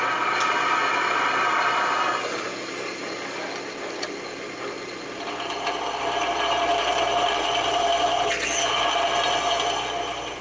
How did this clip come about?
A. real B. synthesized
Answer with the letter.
A